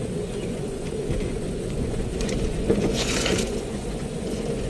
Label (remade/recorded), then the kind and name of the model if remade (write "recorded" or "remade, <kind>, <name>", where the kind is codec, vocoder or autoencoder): remade, vocoder, Vocos